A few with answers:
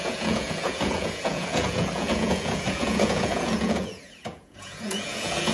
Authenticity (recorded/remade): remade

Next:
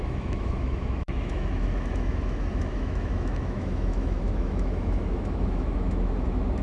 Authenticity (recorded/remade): remade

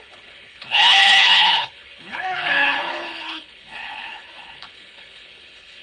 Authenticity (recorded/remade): remade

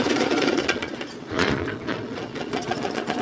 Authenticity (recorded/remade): remade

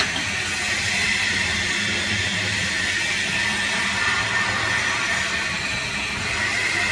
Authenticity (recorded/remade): recorded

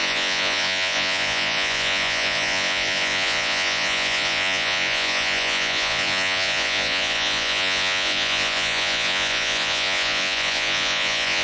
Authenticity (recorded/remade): remade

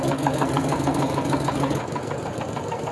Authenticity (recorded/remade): remade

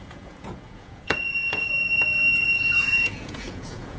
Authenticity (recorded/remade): remade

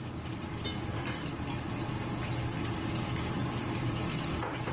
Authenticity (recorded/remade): recorded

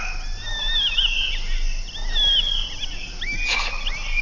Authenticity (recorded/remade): recorded